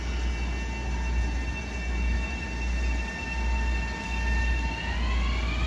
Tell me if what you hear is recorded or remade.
recorded